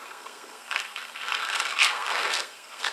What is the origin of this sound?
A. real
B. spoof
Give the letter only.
B